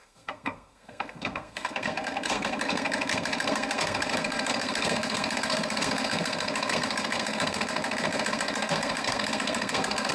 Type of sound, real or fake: fake